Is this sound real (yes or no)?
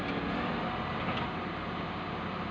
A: yes